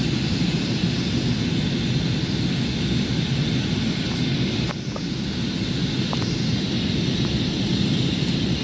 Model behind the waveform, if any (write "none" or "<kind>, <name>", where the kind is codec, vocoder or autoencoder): none